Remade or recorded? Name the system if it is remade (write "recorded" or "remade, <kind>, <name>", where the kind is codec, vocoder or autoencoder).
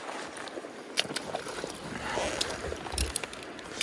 recorded